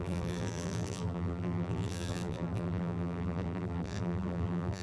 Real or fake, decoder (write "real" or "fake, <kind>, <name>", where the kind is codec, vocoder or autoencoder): fake, vocoder, BigVGAN v2